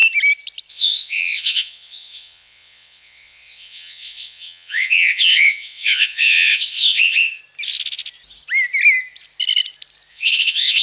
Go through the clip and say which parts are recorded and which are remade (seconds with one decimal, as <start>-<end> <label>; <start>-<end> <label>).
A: 0.0-0.7 recorded; 0.7-7.4 remade; 7.4-10.1 recorded; 10.1-10.8 remade